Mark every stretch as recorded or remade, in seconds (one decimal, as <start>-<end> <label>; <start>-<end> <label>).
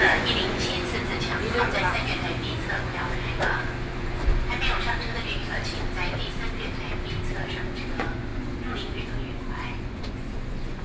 0.0-5.4 remade; 5.4-7.5 recorded; 7.5-10.8 remade